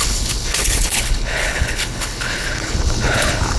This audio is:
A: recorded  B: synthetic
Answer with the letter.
B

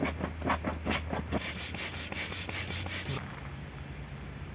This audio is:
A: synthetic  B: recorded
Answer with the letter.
B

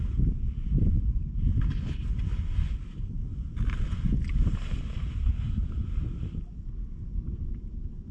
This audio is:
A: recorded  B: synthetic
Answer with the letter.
A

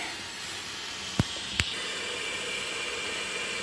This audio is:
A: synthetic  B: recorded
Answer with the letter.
B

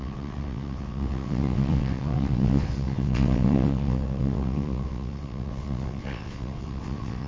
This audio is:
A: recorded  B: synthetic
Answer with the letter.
B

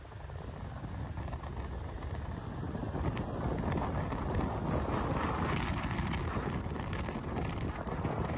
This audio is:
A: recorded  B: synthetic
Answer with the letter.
A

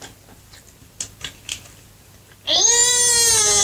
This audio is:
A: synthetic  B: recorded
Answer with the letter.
B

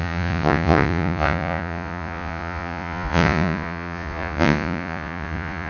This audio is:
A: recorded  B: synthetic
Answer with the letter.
B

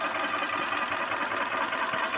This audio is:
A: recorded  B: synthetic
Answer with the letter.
A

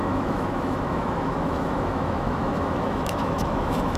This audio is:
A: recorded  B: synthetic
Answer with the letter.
B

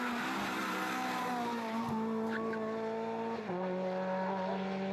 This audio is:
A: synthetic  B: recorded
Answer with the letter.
B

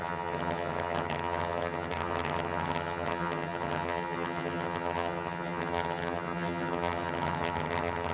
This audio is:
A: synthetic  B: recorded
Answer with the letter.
A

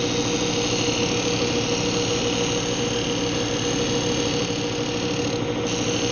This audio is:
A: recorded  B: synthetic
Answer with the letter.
A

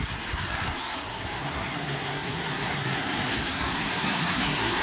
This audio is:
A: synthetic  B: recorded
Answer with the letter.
A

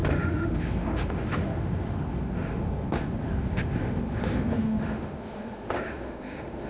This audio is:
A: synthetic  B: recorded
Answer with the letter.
A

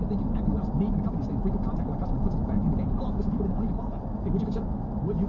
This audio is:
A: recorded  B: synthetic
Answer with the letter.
A